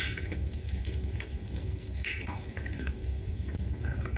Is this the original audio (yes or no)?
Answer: no